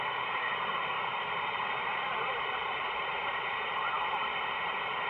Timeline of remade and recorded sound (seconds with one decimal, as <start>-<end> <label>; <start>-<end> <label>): 0.0-5.1 remade